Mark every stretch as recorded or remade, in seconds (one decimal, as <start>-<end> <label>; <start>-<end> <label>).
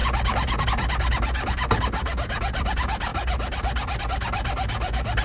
0.0-5.2 recorded